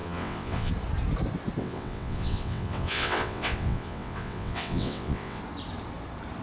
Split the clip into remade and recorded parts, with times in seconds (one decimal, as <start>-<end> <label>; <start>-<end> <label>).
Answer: 0.0-0.7 remade; 0.7-1.6 recorded; 1.6-5.4 remade; 5.4-6.4 recorded